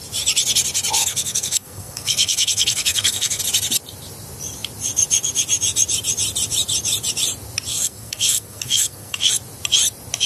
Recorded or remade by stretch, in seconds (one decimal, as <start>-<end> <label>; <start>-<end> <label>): 0.0-1.0 recorded; 1.0-3.4 remade; 3.4-7.7 recorded; 7.7-9.3 remade; 9.3-10.3 recorded